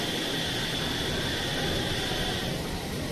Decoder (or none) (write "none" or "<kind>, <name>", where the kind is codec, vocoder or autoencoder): none